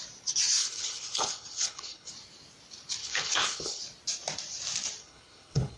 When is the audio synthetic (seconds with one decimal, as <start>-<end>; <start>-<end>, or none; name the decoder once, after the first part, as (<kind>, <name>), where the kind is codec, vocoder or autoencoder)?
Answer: 0.6-2.1 (codec, HILCodec); 3.0-3.8; 5.0-5.8